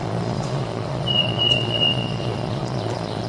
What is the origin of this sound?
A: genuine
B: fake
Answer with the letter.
B